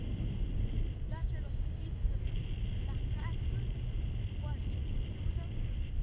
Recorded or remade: recorded